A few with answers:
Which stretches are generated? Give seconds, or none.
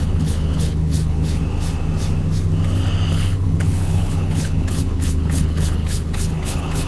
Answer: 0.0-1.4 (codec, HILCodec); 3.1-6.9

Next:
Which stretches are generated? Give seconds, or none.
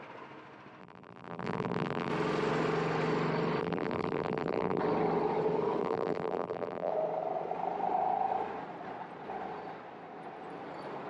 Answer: 0.8-2.1 (vocoder, BigVGAN v2); 3.6-4.8; 5.8-6.9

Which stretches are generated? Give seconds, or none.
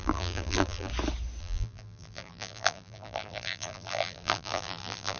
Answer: 0.0-0.9 (vocoder, BigVGAN v2); 1.4-5.2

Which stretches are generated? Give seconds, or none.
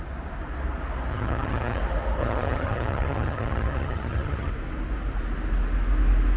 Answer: 1.1-1.8 (vocoder, HiFi-GAN); 2.2-4.5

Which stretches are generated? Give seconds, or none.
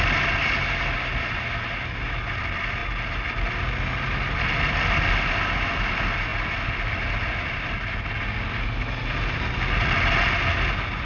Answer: none